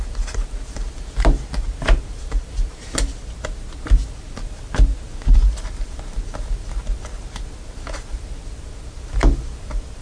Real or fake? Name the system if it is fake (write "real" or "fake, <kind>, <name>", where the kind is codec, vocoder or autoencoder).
real